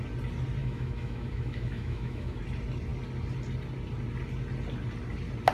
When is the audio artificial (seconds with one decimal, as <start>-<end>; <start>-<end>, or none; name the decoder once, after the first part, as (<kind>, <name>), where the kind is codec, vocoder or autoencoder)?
0.6-2.4 (autoencoder, DAC-VAE)